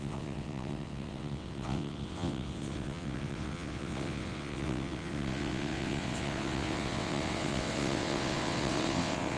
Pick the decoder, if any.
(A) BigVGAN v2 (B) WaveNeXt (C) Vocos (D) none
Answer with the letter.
B